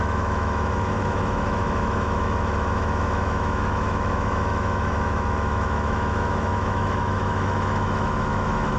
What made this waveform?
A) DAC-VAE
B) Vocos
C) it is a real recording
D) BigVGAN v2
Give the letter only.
A